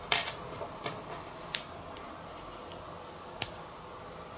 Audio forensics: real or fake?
real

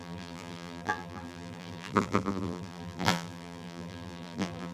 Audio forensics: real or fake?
fake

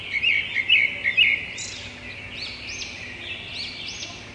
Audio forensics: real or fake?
real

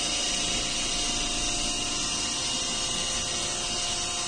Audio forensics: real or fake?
real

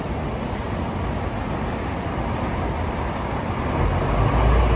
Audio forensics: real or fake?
real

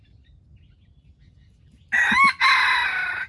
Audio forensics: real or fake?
real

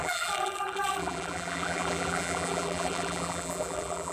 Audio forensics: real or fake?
fake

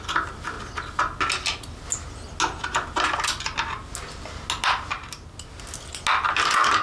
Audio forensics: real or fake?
real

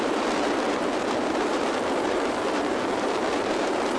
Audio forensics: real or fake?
fake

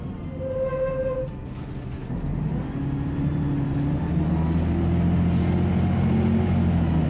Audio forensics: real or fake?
real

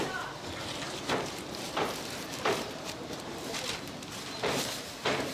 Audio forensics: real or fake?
fake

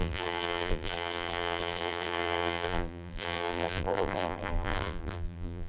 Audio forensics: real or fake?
fake